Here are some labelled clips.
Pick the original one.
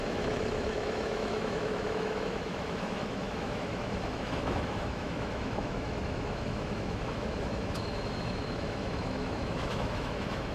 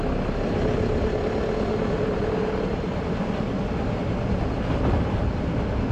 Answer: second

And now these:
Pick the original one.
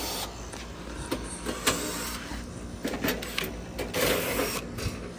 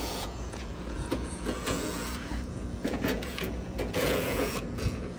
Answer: first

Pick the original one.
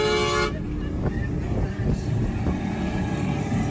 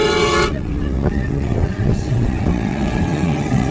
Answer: first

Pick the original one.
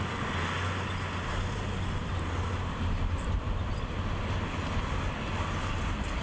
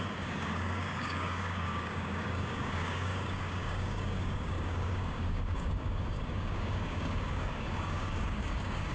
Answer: first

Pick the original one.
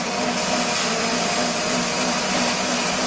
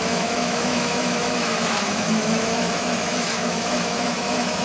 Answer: first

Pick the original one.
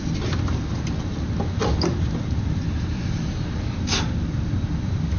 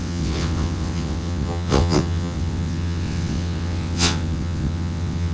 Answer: first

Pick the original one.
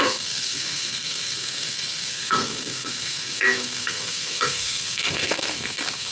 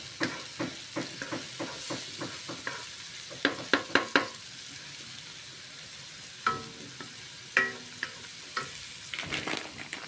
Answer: second